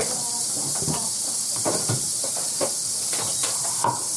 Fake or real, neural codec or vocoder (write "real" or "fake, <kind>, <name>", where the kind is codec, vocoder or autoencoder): fake, vocoder, BigVGAN v2